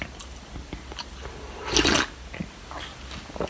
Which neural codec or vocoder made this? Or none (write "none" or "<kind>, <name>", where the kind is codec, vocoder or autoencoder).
none